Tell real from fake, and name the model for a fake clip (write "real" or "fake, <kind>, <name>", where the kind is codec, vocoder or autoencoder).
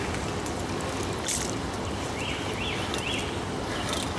real